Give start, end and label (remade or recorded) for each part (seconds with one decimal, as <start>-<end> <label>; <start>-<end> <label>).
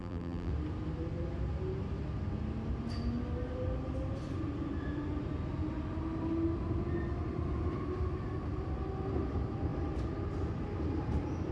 0.0-0.5 remade; 0.5-11.5 recorded